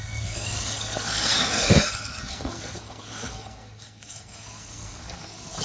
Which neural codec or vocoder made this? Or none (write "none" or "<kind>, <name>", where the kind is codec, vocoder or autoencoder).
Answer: codec, SNAC